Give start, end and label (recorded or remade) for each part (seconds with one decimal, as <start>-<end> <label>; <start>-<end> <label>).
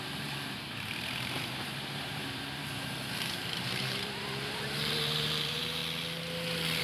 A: 0.0-5.8 remade; 5.8-6.8 recorded